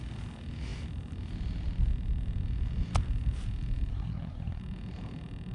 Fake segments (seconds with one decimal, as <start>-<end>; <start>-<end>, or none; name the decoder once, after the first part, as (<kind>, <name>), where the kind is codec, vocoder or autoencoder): 3.9-4.6 (codec, SNAC)